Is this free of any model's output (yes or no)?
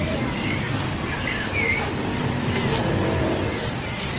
yes